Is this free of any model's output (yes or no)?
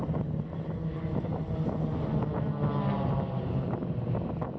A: yes